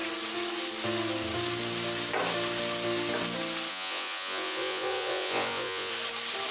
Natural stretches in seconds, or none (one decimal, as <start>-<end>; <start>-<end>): 0.0-3.7; 5.9-6.5